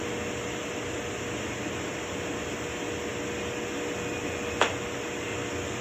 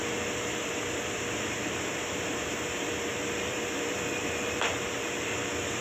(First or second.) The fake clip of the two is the second